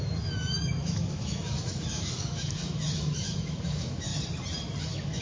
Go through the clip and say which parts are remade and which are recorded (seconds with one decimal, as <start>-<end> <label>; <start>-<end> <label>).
0.0-4.1 remade; 4.1-4.8 recorded; 4.8-5.2 remade